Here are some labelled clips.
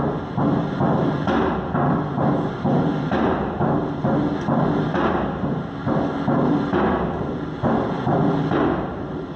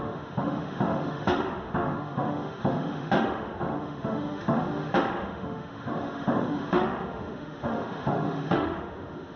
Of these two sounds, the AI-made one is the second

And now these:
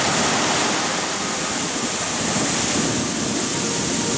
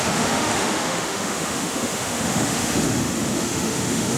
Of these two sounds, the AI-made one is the second